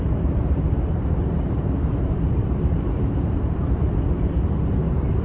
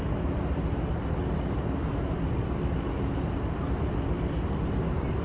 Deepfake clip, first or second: first